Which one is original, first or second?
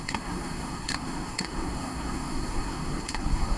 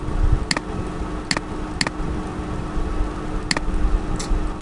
second